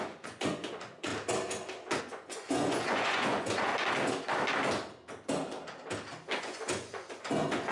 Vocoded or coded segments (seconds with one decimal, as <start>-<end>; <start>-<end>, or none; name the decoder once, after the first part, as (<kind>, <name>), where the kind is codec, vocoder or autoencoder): 0.0-1.1 (vocoder, Vocos); 2.0-3.7; 6.4-7.7